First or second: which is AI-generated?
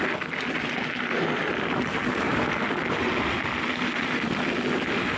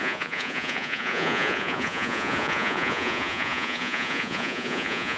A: second